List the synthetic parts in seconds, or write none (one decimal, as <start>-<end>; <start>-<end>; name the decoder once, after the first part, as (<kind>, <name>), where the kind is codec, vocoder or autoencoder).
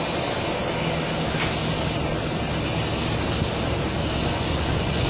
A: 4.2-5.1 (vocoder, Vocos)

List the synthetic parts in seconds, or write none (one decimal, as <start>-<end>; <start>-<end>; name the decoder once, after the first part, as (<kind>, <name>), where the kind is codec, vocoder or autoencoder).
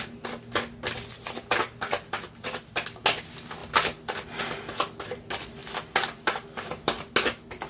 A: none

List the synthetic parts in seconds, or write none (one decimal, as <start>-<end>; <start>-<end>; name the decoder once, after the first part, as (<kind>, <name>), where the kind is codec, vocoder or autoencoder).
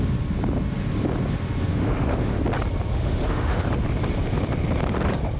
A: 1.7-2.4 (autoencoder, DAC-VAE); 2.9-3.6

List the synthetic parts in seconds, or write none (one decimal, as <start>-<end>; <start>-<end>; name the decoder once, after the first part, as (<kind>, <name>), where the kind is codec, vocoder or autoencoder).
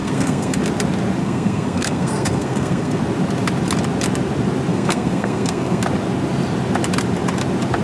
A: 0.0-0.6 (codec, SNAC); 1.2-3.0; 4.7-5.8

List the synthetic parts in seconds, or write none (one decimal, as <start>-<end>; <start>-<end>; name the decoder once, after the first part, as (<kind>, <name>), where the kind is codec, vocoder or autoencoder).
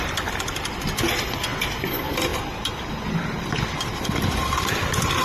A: none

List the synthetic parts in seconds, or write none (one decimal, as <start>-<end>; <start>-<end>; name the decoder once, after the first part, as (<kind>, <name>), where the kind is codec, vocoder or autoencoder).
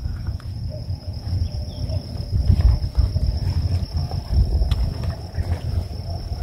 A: 0.0-1.7 (vocoder, Vocos)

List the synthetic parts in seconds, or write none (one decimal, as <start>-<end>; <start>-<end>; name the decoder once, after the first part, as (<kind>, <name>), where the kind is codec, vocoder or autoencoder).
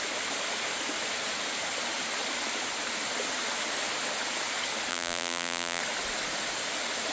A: 4.9-5.8 (vocoder, BigVGAN v2)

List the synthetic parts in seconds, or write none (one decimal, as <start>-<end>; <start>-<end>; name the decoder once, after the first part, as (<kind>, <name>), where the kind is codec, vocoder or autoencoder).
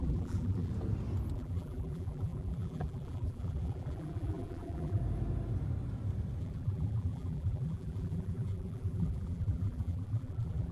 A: 0.0-0.7 (vocoder, BigVGAN v2); 1.3-5.0; 6.4-10.7